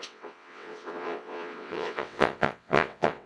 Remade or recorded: remade